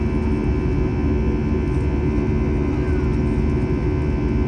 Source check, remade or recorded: recorded